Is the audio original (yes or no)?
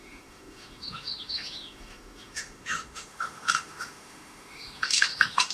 no